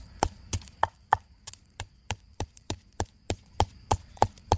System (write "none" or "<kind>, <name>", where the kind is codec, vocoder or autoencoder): vocoder, Vocos